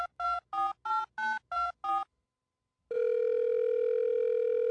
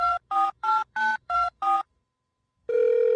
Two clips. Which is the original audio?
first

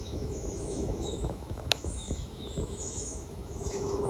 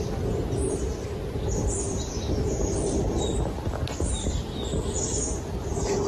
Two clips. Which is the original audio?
second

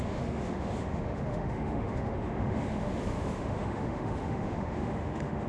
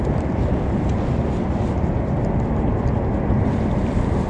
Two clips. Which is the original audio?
second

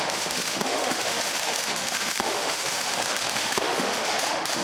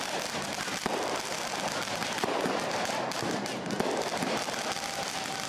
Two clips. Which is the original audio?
second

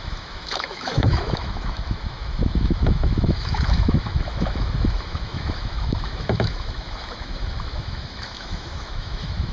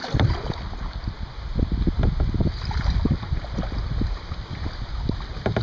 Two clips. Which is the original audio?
second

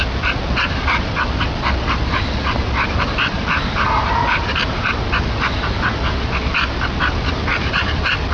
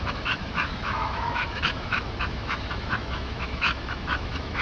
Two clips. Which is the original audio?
first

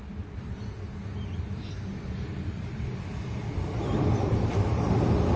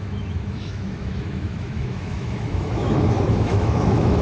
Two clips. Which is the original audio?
first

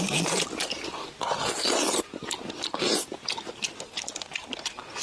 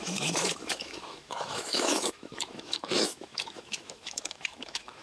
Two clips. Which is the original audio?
first